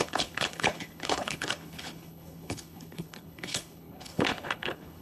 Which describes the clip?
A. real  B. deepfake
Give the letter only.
B